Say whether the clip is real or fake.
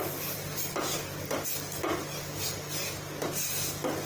real